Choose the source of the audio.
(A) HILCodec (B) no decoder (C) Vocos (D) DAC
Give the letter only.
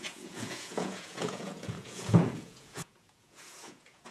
C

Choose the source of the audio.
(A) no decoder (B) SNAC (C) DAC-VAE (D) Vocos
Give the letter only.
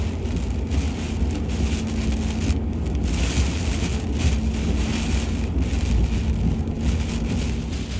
A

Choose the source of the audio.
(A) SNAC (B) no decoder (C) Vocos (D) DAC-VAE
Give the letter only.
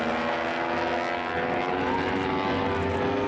B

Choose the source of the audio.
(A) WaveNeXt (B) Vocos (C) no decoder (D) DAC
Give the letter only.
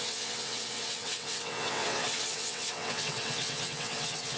A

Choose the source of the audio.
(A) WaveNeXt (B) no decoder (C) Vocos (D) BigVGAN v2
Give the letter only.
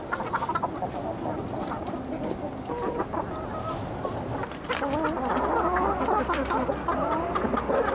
B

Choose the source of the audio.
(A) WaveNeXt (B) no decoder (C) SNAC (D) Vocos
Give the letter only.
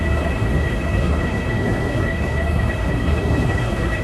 C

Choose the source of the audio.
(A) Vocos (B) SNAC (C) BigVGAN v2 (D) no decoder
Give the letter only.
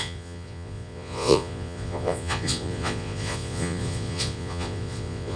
A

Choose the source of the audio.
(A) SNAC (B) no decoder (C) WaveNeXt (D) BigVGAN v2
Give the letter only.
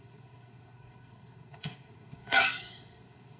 A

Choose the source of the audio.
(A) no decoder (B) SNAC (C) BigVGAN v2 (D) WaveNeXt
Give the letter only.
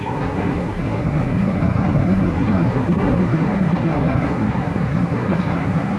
B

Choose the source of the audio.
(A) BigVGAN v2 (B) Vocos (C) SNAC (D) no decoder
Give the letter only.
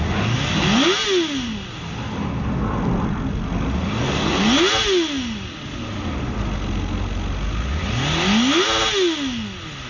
D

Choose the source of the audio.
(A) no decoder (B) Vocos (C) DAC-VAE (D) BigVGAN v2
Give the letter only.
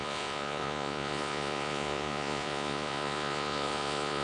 B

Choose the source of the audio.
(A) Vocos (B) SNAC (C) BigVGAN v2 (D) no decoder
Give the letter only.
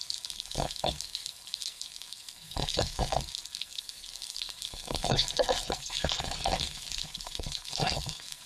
B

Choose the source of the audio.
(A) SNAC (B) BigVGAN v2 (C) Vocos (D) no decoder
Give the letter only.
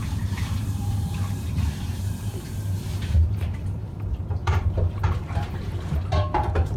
B